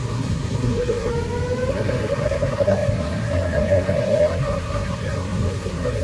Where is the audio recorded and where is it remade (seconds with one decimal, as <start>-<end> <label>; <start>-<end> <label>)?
0.0-1.1 remade; 1.1-1.7 recorded; 1.7-6.0 remade